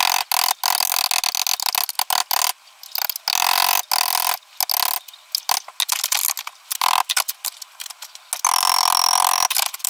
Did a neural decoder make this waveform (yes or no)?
no